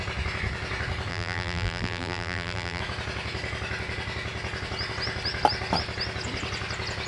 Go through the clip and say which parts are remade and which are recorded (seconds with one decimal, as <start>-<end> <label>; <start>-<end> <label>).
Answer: 0.0-1.1 recorded; 1.1-2.8 remade; 2.8-7.1 recorded